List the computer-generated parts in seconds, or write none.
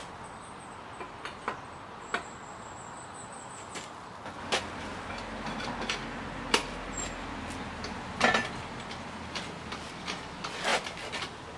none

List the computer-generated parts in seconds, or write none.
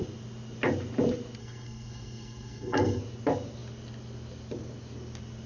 1.4-3.0 (codec, SNAC)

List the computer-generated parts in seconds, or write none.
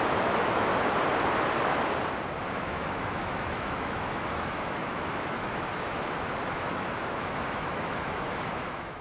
0.0-0.7 (autoencoder, DAC-VAE); 2.5-9.0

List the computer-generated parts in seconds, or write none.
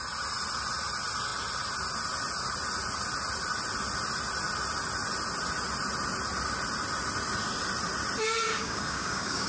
8.5-9.5 (codec, DAC)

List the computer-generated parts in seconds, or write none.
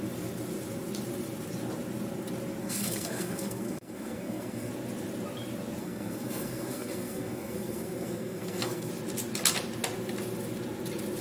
2.6-4.7 (codec, SNAC); 5.8-8.9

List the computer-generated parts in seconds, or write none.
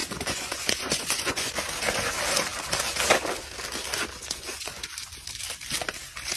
0.0-1.5 (vocoder, Vocos); 4.2-4.9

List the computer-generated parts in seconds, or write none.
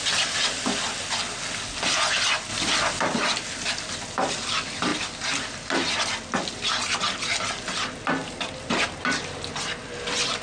2.5-3.0 (vocoder, BigVGAN v2); 4.9-6.0; 8.2-9.3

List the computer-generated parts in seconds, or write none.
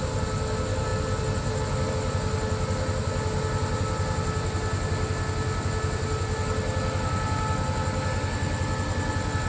none